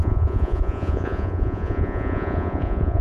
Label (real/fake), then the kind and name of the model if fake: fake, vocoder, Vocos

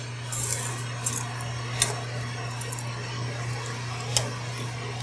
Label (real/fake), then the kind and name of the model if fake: real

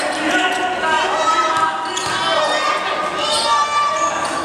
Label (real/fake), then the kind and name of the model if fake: real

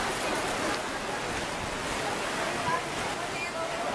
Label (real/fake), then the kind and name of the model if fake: real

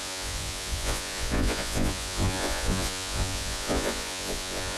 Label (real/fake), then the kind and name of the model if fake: fake, vocoder, Vocos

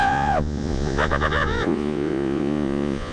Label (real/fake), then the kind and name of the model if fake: fake, vocoder, Vocos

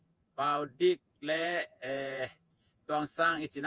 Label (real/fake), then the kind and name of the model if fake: fake, vocoder, Vocos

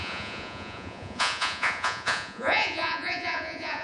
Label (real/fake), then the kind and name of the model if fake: fake, vocoder, Vocos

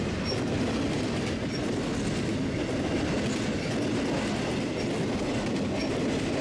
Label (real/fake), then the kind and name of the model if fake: real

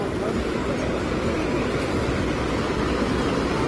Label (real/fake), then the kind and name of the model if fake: real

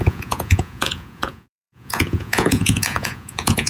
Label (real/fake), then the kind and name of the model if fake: fake, vocoder, Vocos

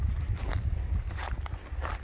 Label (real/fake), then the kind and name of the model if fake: real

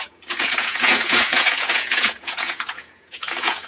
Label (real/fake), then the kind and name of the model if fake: fake, vocoder, Vocos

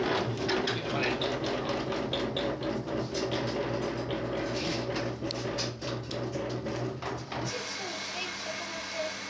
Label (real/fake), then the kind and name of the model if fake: real